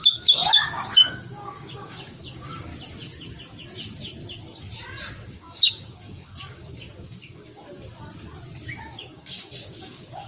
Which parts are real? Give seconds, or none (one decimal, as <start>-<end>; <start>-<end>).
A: 2.7-5.3; 7.6-8.8

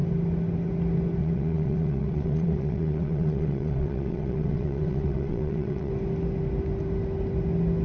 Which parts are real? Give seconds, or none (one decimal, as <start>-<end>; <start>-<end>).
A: 0.0-1.2; 5.9-7.8

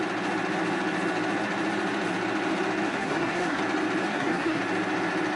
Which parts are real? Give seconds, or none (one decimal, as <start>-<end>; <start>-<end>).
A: 0.0-2.9; 3.6-4.1; 4.6-5.4

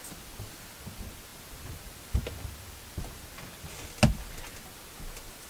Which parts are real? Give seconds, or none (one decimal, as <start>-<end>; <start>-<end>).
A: 0.0-5.5

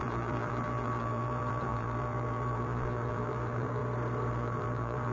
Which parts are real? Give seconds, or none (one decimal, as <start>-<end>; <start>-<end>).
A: 3.8-4.3

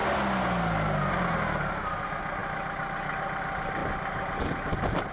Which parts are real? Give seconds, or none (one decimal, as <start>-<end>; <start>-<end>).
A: 0.0-5.1